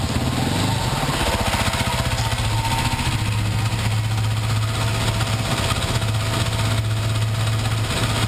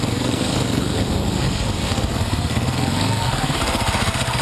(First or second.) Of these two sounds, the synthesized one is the second